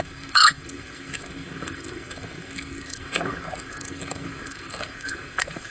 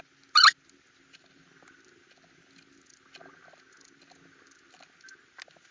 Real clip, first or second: second